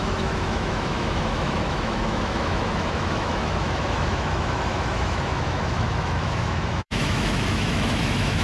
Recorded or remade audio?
remade